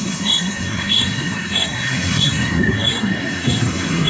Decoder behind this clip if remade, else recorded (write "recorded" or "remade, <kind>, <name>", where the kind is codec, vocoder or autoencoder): remade, codec, SNAC